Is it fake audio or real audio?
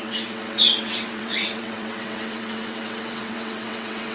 fake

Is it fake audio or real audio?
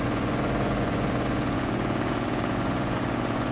fake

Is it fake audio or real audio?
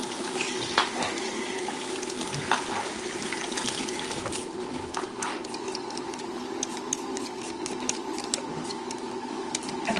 fake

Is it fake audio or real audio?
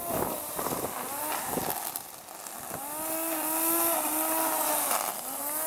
real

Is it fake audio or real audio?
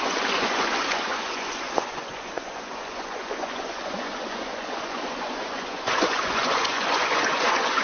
fake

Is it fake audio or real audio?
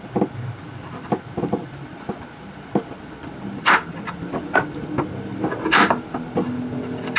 real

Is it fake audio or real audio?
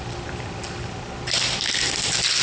fake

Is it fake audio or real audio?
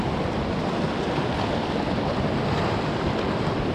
real